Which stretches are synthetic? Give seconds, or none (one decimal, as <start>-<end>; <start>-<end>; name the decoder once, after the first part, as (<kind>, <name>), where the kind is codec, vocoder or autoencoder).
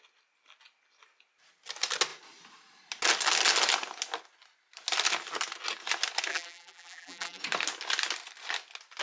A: 6.3-7.4 (vocoder, BigVGAN v2)